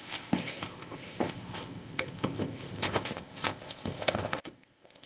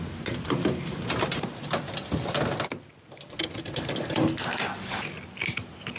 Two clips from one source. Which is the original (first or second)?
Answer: second